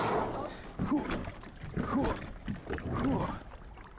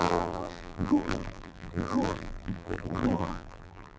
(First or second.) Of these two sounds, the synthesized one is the second